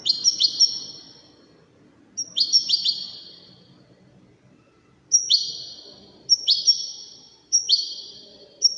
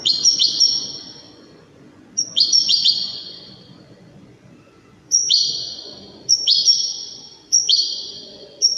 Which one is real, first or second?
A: first